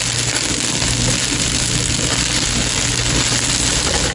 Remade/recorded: recorded